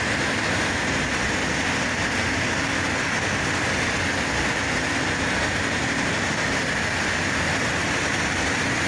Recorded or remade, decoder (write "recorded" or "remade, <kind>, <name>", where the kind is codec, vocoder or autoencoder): recorded